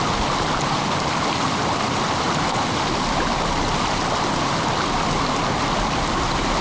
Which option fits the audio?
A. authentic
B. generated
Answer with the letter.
A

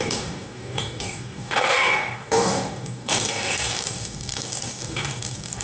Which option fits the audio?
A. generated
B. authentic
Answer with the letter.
A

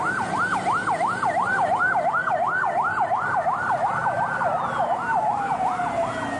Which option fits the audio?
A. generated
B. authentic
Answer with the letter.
B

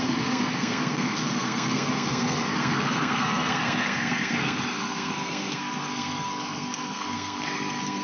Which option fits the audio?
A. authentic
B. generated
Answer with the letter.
B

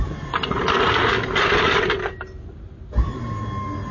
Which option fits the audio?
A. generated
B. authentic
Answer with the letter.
B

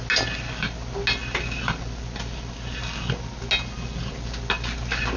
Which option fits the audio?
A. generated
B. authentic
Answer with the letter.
B